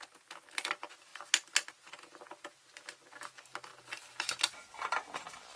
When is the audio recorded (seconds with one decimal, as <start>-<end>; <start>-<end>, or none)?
0.0-5.6